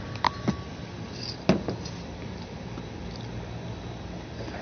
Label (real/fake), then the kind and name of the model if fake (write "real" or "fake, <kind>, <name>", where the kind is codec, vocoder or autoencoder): real